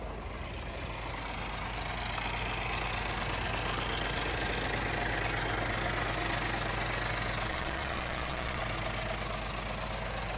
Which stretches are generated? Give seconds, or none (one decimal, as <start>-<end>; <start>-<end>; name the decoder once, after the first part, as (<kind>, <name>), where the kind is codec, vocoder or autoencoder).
7.5-8.6 (vocoder, Vocos)